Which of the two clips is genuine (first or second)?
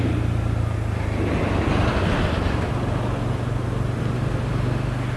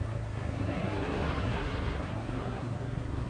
first